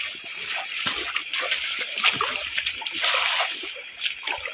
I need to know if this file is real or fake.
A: real